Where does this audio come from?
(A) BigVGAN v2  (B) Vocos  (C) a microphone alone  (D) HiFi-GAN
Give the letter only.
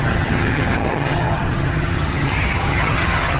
D